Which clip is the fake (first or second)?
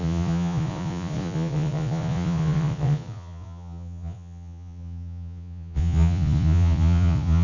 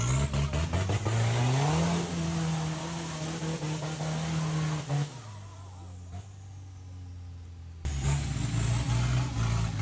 first